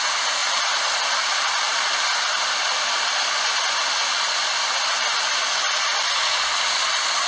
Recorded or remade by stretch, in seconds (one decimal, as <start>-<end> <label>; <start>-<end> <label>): 0.0-7.3 recorded